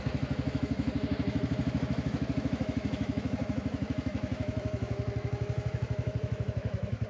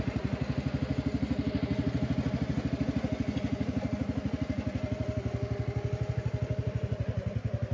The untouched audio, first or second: second